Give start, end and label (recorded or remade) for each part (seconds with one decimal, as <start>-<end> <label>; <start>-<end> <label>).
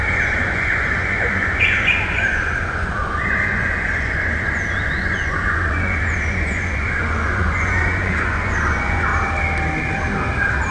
0.0-9.1 remade; 9.1-10.7 recorded